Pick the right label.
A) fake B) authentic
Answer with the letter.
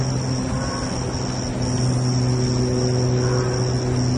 B